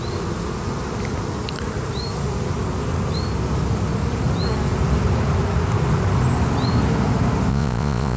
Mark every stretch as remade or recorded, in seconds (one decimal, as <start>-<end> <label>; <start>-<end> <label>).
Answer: 0.0-7.5 recorded; 7.5-8.2 remade